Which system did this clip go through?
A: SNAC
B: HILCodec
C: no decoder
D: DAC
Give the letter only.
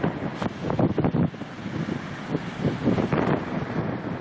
C